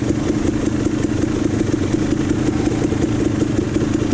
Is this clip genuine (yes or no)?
yes